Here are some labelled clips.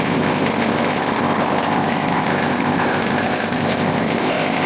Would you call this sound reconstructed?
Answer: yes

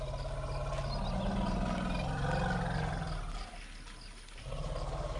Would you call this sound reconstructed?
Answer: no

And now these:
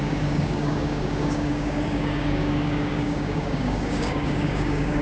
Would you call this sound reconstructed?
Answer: yes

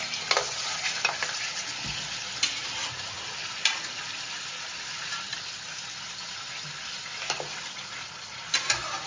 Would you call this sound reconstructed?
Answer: no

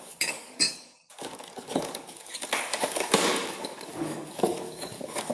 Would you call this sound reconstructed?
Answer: yes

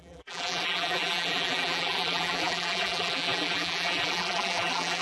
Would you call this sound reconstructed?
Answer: yes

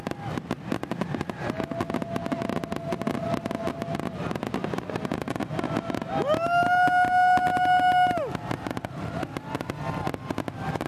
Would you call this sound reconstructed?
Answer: no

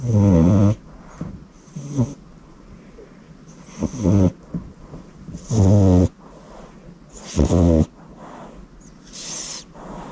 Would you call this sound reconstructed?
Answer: no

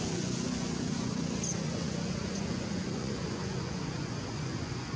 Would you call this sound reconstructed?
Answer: yes